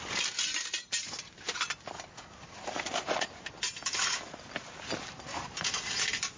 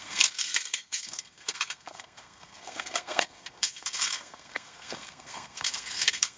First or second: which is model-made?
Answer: second